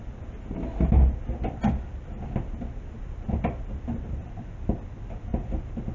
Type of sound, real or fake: real